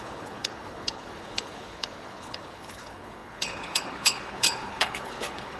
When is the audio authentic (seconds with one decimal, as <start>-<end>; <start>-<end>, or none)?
none